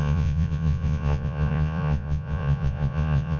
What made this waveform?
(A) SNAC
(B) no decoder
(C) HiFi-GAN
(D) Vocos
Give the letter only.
D